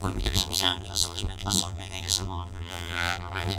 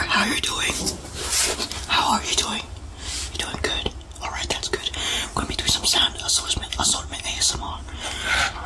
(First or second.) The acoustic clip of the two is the second